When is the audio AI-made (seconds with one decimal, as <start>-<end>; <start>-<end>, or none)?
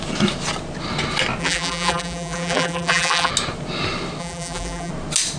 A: 1.4-3.3; 4.2-4.9